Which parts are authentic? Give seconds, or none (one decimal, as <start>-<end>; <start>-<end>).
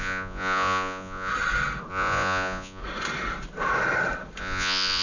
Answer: 1.3-1.9; 2.8-4.4